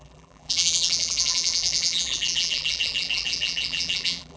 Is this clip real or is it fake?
fake